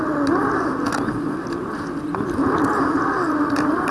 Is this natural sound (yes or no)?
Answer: yes